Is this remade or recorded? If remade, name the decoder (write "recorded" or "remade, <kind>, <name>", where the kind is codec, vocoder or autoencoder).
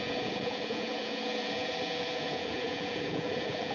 remade, vocoder, Vocos